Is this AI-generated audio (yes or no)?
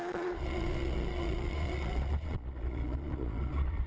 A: yes